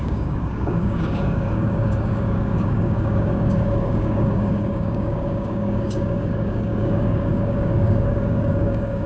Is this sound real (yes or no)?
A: no